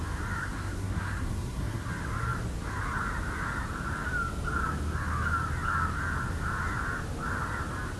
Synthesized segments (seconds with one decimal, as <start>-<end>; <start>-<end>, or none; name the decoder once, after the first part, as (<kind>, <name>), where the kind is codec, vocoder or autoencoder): 0.4-1.9 (codec, SNAC)